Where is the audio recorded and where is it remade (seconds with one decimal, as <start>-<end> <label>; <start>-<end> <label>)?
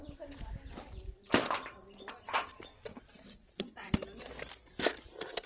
0.0-2.9 recorded; 2.9-3.9 remade; 3.9-5.5 recorded